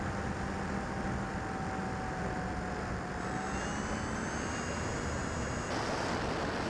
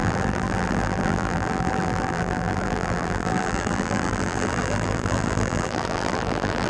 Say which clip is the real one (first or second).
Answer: first